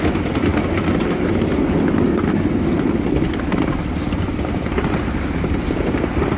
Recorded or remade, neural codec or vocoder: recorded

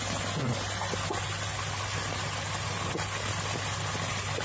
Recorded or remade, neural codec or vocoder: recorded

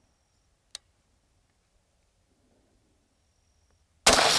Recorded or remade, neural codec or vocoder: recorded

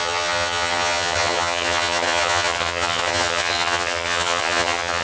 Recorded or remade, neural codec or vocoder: remade, vocoder, HiFi-GAN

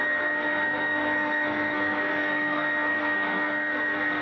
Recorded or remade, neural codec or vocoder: remade, codec, SNAC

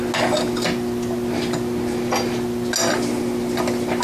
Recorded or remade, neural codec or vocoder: recorded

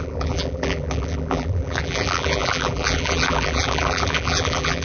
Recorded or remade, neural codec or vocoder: remade, vocoder, BigVGAN v2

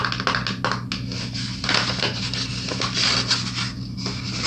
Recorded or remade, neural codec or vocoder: recorded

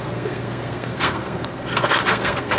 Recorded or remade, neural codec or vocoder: remade, codec, SNAC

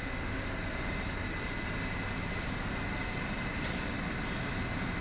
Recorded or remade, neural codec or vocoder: recorded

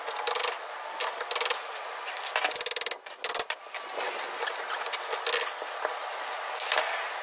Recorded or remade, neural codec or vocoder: recorded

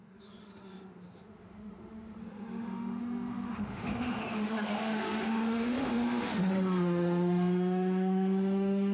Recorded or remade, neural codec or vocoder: remade, autoencoder, DAC-VAE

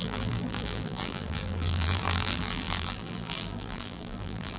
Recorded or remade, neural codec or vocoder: remade, vocoder, BigVGAN v2